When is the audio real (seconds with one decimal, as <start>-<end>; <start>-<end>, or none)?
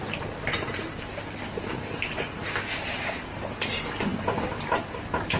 0.0-5.4